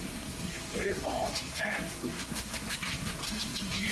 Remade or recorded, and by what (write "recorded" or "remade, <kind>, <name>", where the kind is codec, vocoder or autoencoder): remade, codec, SNAC